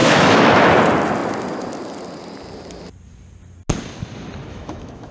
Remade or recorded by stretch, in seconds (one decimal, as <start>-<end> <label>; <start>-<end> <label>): 0.0-0.7 remade; 0.7-4.5 recorded; 4.5-5.1 remade